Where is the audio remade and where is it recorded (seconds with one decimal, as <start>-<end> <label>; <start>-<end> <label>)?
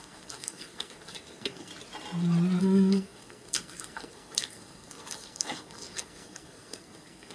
0.0-1.7 remade; 1.7-2.6 recorded; 2.6-7.3 remade